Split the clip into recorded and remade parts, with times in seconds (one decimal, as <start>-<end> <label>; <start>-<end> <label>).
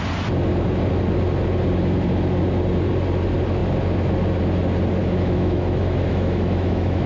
0.0-5.0 recorded; 5.0-7.1 remade